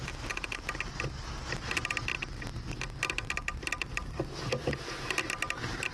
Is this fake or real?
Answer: real